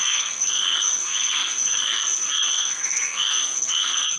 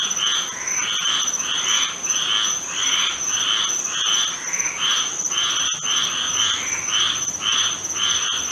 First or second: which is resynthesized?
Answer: first